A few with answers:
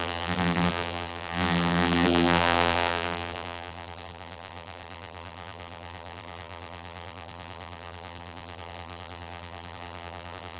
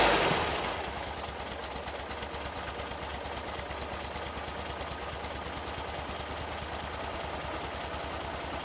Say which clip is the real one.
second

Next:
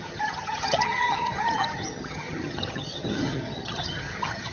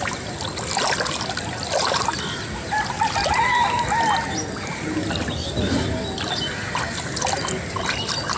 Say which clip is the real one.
second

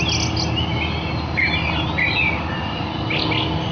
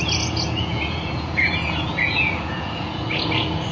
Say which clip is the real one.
first